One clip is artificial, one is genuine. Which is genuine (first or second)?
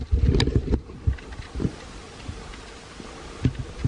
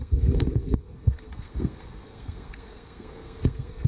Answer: first